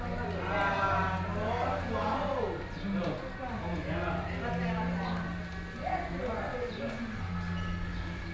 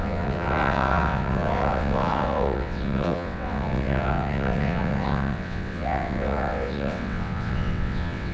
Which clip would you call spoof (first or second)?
second